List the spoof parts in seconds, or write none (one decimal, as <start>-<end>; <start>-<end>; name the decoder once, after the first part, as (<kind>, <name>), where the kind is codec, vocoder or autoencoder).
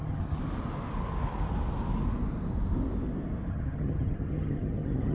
0.0-0.4 (vocoder, HiFi-GAN); 3.5-5.1